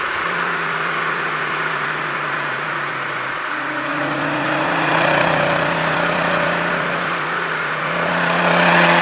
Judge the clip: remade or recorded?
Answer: remade